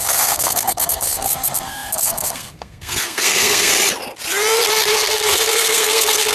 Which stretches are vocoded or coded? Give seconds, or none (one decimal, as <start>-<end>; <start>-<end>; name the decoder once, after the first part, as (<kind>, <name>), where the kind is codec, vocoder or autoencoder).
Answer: 0.0-3.7 (codec, SNAC); 4.9-6.3